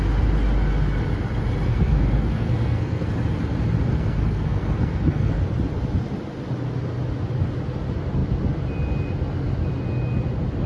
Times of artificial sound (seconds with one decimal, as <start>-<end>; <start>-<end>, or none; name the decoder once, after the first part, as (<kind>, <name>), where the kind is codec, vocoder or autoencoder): 1.7-3.1 (codec, SNAC); 3.9-5.4